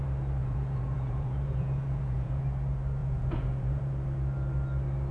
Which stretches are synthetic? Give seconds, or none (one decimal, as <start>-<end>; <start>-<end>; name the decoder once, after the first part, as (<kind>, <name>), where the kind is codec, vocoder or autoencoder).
0.4-2.4 (vocoder, Vocos); 3.0-3.8